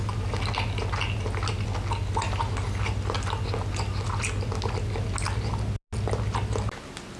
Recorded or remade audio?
recorded